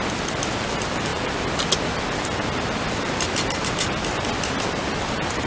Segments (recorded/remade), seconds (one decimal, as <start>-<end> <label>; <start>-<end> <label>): 0.0-5.5 recorded